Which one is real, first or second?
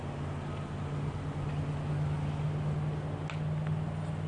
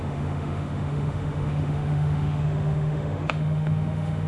first